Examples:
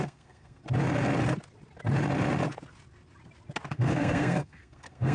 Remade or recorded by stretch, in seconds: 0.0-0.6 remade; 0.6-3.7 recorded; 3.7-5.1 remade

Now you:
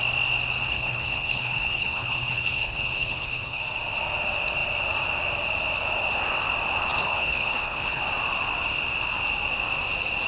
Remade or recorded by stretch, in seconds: 0.0-0.7 recorded; 0.7-3.6 remade; 3.6-7.0 recorded; 7.0-8.0 remade; 8.0-10.3 recorded